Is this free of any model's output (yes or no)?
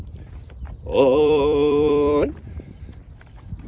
no